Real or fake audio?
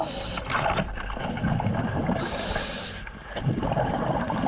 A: real